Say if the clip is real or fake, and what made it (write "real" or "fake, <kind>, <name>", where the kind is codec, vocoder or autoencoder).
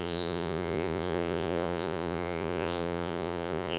fake, vocoder, Vocos